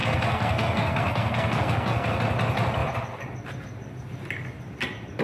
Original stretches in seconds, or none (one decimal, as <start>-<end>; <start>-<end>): 2.2-5.2